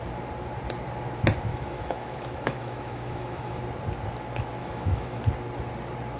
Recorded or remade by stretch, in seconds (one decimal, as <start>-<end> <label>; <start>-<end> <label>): 0.0-1.5 recorded; 1.5-3.6 remade; 3.6-4.6 recorded; 4.6-5.2 remade; 5.2-6.2 recorded